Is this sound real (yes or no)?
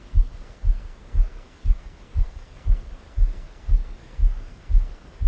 no